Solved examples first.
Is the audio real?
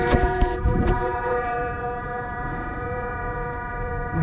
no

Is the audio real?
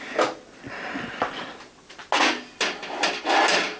yes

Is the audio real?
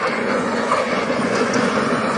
no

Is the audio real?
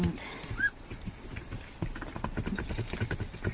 yes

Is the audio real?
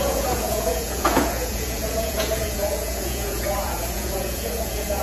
no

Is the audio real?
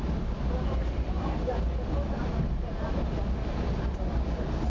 yes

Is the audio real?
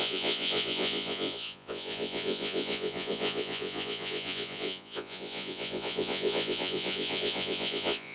no